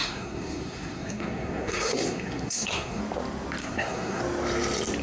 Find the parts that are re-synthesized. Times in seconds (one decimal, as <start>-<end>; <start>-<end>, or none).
0.0-3.0; 3.6-4.2